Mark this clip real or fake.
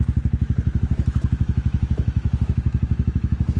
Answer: fake